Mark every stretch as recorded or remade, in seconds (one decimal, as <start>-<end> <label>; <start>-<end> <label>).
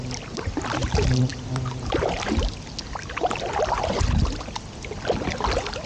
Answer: 0.0-5.9 recorded